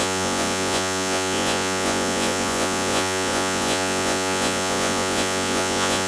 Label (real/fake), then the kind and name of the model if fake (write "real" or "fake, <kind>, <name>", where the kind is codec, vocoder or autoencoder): fake, vocoder, Vocos